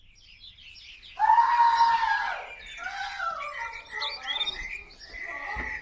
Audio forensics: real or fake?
real